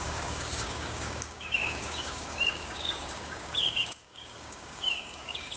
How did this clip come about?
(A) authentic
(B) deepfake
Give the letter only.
B